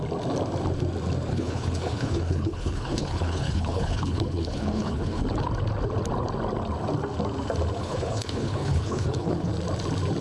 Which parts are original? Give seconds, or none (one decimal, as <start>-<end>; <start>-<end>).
0.0-1.3; 5.2-7.8; 9.5-10.2